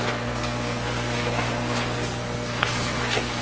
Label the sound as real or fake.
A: fake